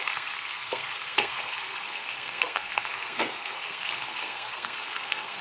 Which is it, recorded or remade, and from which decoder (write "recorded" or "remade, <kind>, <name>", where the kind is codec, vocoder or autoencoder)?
remade, codec, SNAC